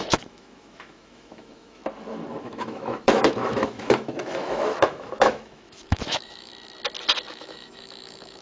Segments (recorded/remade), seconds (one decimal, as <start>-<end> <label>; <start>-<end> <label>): 0.0-1.8 remade; 1.8-2.4 recorded; 2.4-6.5 remade; 6.5-7.3 recorded; 7.3-8.4 remade